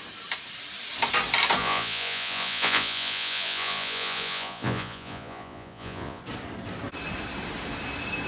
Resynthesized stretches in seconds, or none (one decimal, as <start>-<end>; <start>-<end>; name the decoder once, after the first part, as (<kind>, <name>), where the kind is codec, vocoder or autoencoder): 1.6-6.2 (vocoder, Vocos)